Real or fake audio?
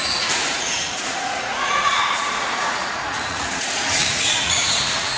fake